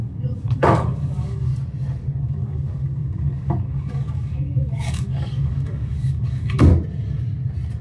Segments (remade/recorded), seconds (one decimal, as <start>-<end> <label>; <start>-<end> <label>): 0.0-1.5 remade; 1.5-2.2 recorded; 2.2-6.7 remade; 6.7-7.8 recorded